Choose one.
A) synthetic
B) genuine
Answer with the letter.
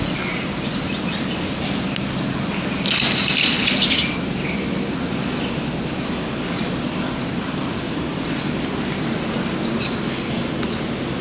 B